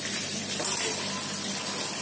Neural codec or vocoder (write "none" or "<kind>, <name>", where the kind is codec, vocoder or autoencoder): none